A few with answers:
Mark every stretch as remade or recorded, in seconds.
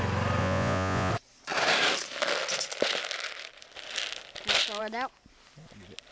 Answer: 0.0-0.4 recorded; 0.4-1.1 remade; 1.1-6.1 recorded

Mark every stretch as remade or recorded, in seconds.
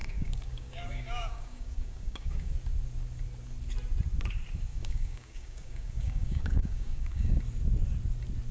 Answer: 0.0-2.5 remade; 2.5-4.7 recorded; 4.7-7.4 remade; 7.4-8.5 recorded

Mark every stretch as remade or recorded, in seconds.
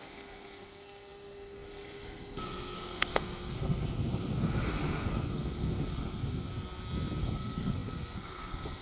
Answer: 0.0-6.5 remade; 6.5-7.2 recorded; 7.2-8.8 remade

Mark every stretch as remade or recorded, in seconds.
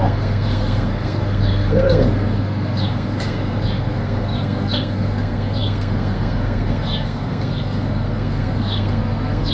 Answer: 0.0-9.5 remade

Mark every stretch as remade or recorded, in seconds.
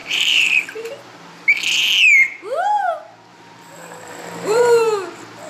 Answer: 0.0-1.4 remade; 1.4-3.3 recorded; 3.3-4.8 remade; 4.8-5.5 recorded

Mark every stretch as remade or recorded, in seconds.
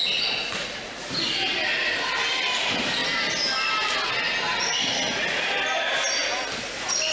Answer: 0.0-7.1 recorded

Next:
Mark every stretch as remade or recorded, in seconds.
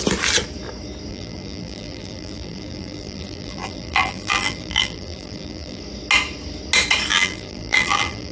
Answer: 0.0-1.1 recorded; 1.1-5.8 remade; 5.8-7.1 recorded; 7.1-8.3 remade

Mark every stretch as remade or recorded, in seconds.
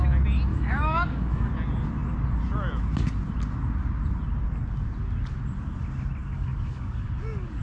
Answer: 0.0-0.5 recorded; 0.5-1.5 remade; 1.5-6.2 recorded; 6.2-7.6 remade